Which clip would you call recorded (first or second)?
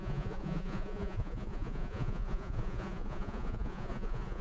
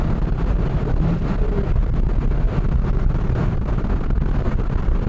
second